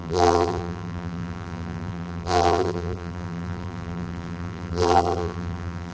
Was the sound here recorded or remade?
remade